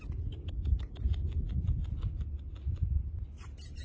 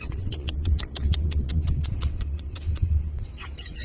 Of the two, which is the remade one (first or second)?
second